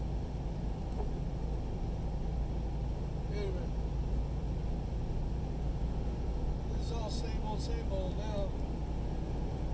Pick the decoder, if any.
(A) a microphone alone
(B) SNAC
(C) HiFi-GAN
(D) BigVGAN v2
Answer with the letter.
A